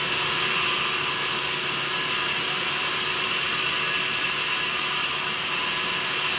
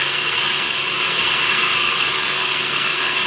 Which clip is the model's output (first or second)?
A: second